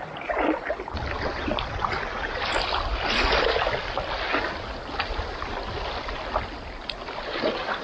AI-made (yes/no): no